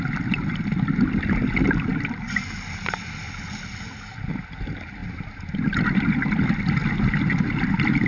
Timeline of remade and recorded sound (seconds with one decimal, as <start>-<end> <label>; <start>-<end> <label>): 0.0-8.1 recorded